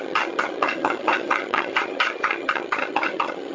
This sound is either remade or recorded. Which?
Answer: remade